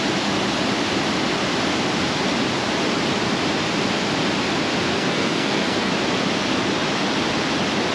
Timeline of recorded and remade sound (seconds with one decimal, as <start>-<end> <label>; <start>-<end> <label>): 0.0-4.9 recorded; 4.9-5.9 remade; 5.9-7.9 recorded